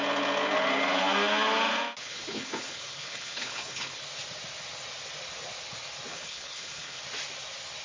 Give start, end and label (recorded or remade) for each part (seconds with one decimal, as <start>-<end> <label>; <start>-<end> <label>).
0.0-2.0 recorded; 2.0-4.0 remade; 4.0-6.1 recorded; 6.1-7.0 remade; 7.0-7.8 recorded